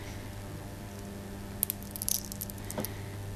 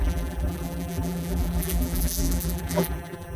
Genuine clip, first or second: first